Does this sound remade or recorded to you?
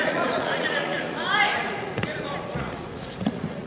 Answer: remade